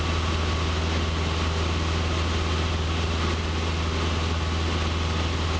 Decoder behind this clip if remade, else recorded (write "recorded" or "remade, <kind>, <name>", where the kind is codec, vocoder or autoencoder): recorded